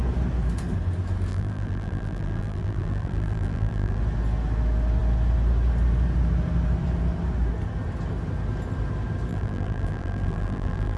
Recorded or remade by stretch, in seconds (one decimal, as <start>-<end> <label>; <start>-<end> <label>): 0.0-1.3 recorded; 1.3-4.0 remade; 4.0-9.3 recorded; 9.3-11.0 remade